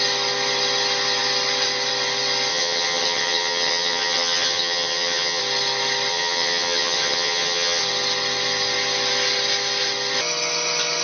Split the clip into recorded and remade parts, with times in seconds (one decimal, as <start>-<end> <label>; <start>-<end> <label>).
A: 0.0-2.5 recorded; 2.5-5.4 remade; 5.4-6.1 recorded; 6.1-7.8 remade; 7.8-11.0 recorded